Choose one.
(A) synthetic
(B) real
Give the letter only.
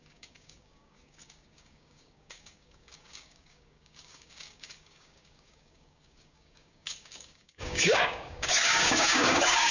A